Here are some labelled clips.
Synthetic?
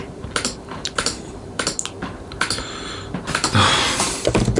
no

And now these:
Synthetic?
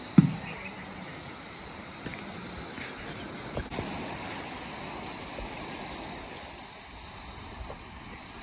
no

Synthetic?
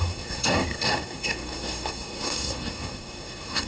yes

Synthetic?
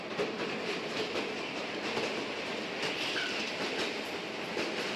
no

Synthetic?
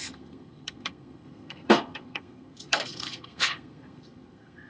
yes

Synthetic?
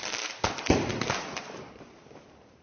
no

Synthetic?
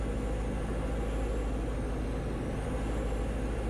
no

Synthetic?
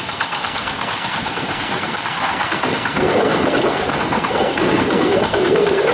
yes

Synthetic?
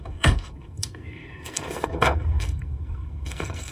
yes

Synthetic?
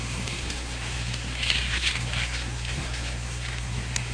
yes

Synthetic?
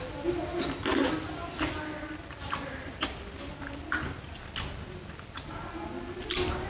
no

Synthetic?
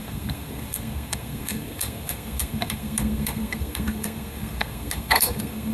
yes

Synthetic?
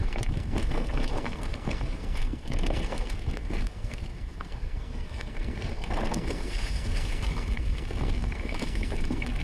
yes